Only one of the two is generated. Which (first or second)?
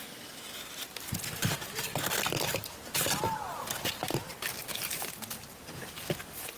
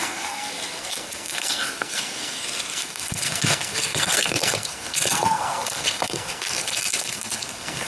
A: second